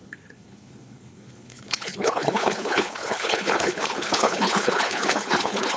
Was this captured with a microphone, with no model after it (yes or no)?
no